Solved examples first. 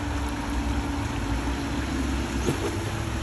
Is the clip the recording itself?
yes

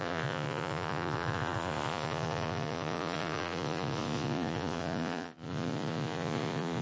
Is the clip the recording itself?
no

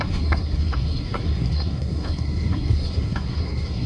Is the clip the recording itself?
no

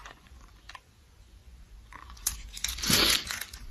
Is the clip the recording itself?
no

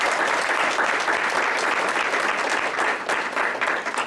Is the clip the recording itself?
yes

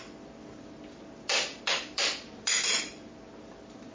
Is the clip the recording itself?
yes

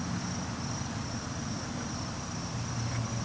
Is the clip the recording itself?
yes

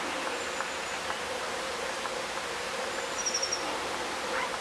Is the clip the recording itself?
yes